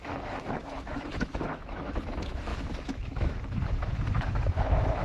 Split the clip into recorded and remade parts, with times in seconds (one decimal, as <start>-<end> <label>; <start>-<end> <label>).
0.0-5.0 remade